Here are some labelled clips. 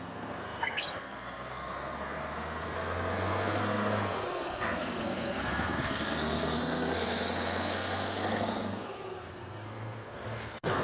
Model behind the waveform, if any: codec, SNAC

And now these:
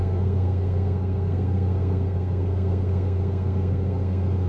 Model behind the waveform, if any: codec, SNAC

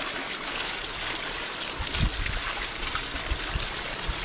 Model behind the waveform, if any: none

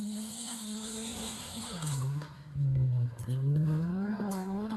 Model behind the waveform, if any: codec, SNAC